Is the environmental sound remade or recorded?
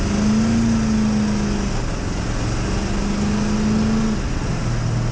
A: recorded